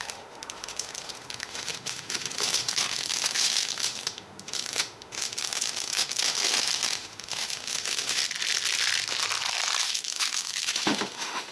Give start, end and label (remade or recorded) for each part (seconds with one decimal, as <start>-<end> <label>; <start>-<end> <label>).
0.0-8.2 remade; 8.2-9.8 recorded; 9.8-11.5 remade

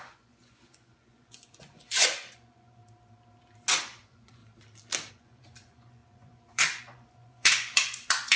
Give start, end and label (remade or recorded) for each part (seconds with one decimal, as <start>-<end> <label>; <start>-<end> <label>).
0.0-2.8 remade; 2.8-3.8 recorded; 3.8-4.4 remade; 4.4-5.1 recorded; 5.1-8.4 remade

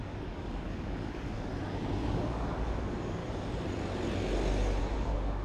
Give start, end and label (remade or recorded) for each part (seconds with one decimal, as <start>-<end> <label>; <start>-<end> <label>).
0.0-1.5 remade; 1.5-2.1 recorded; 2.1-3.2 remade; 3.2-4.8 recorded; 4.8-5.4 remade

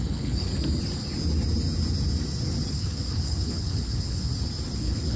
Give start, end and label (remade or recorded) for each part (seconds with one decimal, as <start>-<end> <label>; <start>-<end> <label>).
0.0-0.5 remade; 0.5-2.7 recorded; 2.7-4.3 remade; 4.3-4.8 recorded; 4.8-5.2 remade

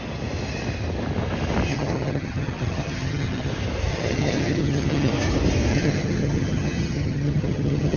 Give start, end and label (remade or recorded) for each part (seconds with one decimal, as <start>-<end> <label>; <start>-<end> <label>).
0.0-1.7 recorded; 1.7-3.5 remade; 3.5-3.9 recorded; 3.9-5.1 remade; 5.1-5.7 recorded; 5.7-8.0 remade